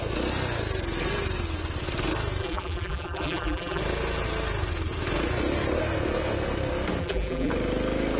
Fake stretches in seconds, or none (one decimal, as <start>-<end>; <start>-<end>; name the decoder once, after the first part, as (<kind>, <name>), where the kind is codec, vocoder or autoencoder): 2.4-3.8 (vocoder, BigVGAN v2); 7.0-7.5